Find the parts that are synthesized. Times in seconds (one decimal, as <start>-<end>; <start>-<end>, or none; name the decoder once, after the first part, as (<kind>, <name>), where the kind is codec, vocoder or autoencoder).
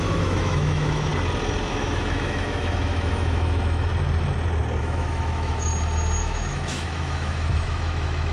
0.0-1.1 (autoencoder, DAC-VAE); 1.7-3.9; 4.8-5.7; 6.2-8.3